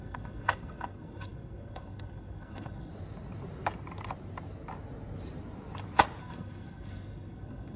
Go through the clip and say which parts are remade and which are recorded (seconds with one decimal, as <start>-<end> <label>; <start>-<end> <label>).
0.0-2.9 remade; 2.9-6.2 recorded; 6.2-7.8 remade